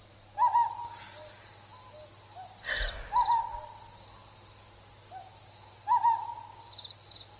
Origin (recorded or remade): recorded